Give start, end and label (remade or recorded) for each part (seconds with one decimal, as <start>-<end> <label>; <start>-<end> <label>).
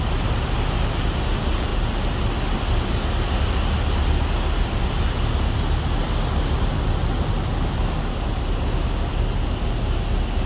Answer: 0.0-10.5 recorded